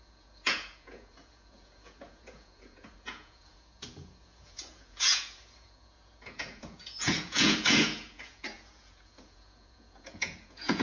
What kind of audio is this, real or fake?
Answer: fake